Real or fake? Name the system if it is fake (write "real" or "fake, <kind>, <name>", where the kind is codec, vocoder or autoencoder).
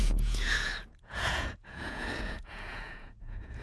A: fake, vocoder, Vocos